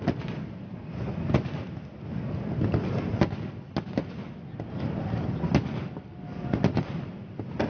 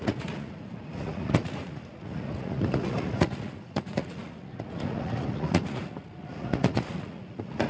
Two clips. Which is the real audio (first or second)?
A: first